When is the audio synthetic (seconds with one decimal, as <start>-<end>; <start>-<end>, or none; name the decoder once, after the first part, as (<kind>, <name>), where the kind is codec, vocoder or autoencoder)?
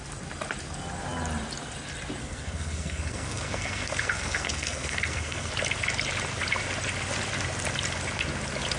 2.2-5.5 (codec, SNAC)